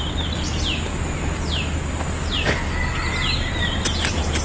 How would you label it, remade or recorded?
recorded